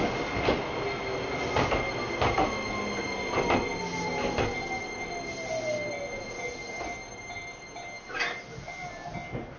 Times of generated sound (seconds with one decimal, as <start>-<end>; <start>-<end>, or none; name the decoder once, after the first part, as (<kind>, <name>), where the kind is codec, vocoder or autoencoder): none